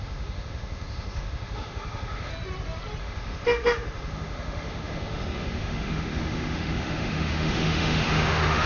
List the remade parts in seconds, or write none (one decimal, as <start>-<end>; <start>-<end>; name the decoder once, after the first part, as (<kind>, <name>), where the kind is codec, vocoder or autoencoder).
0.0-2.3 (autoencoder, DAC-VAE); 3.0-8.7